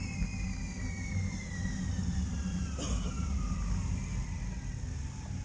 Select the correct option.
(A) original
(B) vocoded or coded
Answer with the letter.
A